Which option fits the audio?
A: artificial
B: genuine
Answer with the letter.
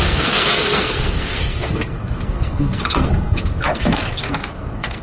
A